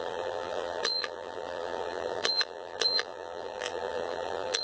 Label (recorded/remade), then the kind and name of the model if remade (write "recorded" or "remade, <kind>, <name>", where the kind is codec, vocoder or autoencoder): remade, vocoder, BigVGAN v2